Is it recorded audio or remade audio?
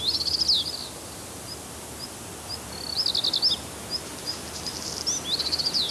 recorded